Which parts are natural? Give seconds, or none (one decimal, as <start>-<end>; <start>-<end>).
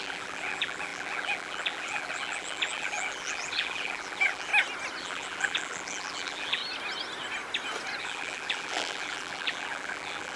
4.5-5.0; 6.6-8.0